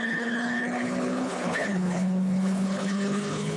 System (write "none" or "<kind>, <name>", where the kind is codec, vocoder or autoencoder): codec, HILCodec